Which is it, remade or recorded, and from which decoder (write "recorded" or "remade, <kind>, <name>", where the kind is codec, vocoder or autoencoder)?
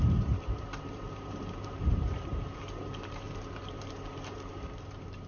remade, vocoder, BigVGAN v2